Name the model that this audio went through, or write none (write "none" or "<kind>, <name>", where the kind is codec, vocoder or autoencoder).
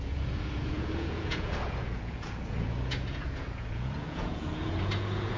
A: vocoder, Vocos